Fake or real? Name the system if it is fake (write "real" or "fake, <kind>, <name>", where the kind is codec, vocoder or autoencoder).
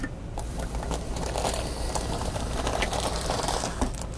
real